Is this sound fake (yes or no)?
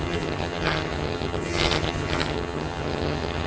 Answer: yes